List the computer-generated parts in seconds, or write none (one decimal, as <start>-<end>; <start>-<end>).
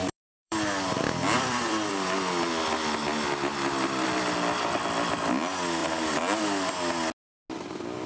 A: 0.0-1.9; 5.8-6.4